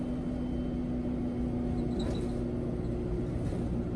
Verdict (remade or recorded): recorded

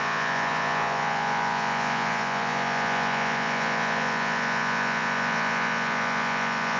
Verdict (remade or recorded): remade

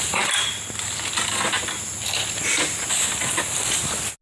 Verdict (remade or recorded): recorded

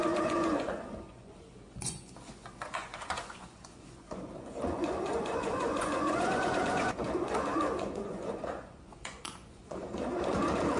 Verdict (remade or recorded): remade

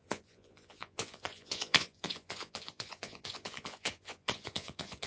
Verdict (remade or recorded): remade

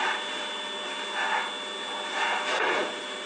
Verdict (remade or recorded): recorded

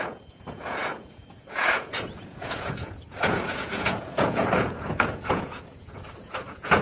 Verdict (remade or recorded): remade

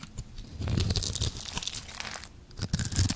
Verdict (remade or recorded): recorded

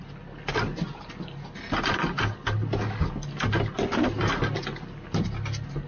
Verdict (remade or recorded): recorded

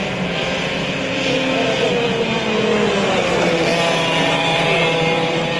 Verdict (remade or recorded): recorded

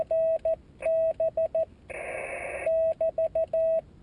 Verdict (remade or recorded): recorded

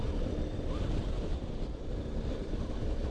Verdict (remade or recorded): recorded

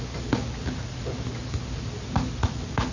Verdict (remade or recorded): recorded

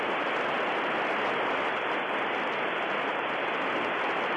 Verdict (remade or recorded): recorded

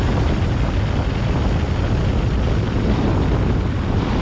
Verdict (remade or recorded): recorded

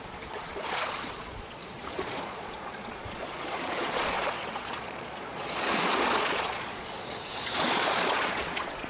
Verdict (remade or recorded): remade